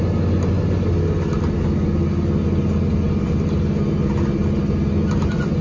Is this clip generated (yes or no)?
no